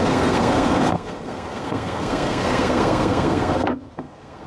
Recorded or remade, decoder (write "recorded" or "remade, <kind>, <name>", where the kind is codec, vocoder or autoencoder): remade, codec, SNAC